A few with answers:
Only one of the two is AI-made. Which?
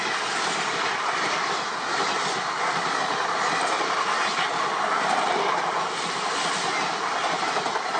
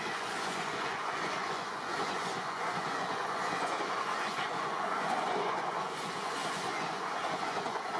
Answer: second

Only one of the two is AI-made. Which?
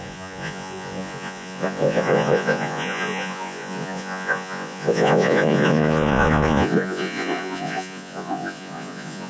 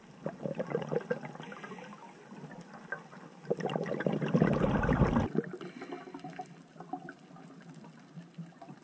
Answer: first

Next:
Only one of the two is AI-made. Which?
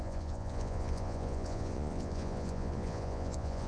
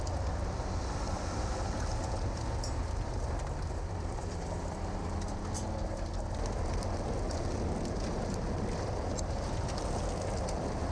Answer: first